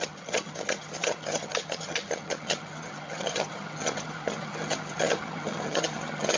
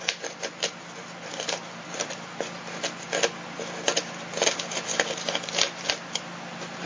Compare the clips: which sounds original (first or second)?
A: second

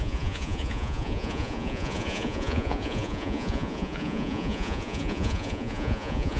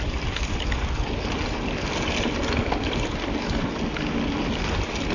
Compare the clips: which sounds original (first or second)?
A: second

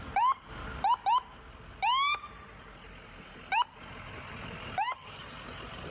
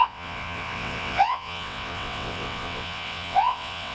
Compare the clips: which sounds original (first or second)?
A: first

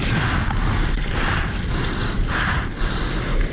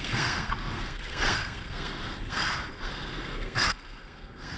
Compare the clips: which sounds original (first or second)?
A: first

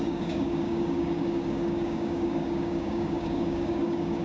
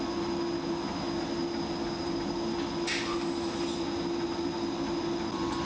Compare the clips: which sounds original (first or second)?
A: second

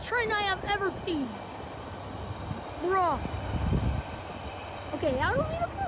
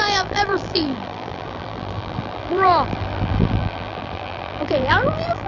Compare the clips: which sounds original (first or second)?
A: first